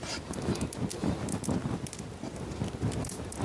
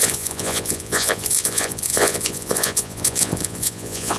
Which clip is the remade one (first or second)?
second